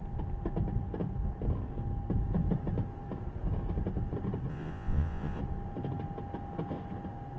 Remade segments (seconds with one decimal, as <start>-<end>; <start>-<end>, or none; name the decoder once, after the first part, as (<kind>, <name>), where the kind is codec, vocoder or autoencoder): 4.5-5.4 (vocoder, Vocos)